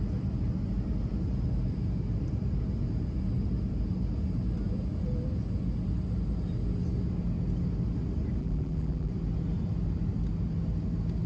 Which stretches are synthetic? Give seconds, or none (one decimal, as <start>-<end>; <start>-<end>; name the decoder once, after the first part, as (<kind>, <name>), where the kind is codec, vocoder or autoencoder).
8.4-9.1 (vocoder, BigVGAN v2)